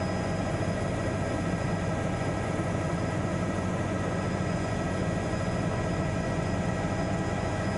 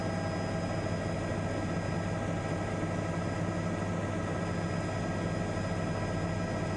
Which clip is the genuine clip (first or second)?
second